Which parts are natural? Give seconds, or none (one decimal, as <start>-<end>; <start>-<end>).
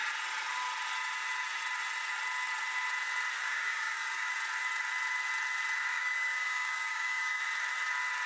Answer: 0.0-3.4; 4.3-5.9; 7.4-8.3